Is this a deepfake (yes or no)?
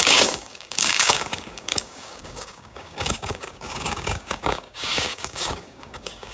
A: yes